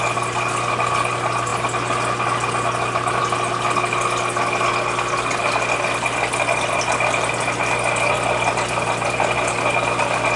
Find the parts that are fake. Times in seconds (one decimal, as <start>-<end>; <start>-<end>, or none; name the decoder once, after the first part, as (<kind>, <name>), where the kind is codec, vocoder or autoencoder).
none